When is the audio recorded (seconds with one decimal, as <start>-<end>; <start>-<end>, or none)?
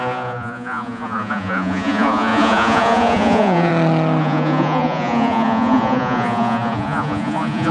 3.7-4.2